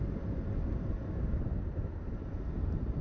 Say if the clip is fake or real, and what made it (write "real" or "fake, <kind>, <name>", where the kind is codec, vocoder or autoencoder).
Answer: real